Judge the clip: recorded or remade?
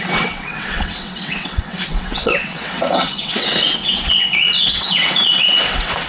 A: remade